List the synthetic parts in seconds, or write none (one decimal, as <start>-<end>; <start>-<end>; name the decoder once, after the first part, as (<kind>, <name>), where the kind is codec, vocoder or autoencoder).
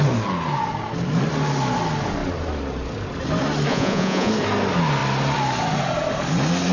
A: 3.7-4.3 (vocoder, Vocos)